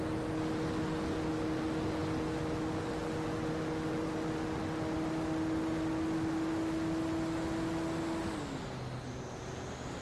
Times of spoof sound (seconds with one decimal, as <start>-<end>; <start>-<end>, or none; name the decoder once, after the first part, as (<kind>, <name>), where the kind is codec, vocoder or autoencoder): none